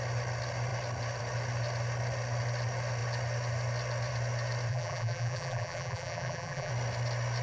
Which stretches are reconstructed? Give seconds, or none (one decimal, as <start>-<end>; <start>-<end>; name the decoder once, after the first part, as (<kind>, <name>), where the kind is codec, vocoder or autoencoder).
4.7-6.7 (vocoder, BigVGAN v2)